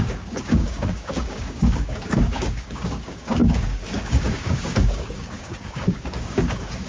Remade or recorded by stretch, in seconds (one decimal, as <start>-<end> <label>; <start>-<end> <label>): 0.0-6.9 remade